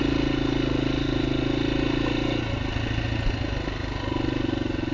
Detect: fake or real real